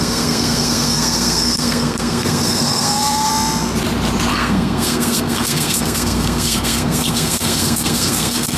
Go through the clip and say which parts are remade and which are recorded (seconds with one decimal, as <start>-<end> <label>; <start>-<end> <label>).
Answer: 0.0-3.3 remade; 3.3-4.3 recorded; 4.3-8.6 remade